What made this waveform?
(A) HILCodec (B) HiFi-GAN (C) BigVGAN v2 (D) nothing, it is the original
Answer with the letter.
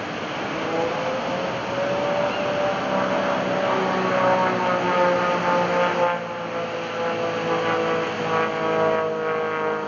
D